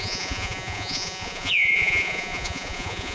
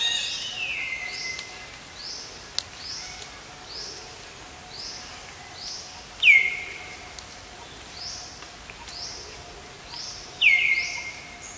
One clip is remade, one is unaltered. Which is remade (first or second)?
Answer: first